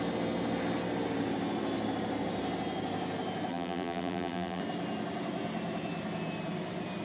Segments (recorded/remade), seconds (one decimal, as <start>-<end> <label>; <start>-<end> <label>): 0.0-3.5 recorded; 3.5-4.6 remade; 4.6-7.0 recorded